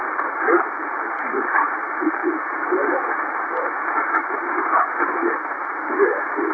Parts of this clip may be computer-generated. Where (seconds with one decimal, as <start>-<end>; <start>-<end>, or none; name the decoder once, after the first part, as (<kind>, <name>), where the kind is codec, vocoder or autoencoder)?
0.0-2.2 (vocoder, BigVGAN v2); 6.0-6.5